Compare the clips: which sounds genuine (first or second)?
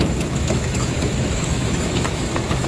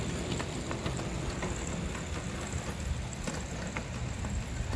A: second